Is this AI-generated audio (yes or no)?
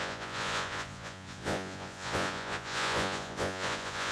yes